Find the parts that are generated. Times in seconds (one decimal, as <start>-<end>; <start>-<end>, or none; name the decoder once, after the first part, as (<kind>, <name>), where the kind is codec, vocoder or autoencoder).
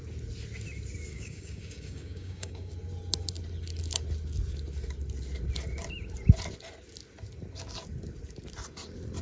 1.1-2.7 (codec, DAC)